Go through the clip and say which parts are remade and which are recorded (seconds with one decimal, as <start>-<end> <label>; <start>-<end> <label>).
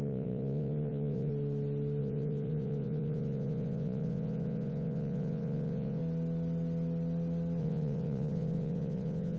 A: 0.0-1.3 remade; 1.3-2.0 recorded; 2.0-6.0 remade; 6.0-7.6 recorded; 7.6-9.4 remade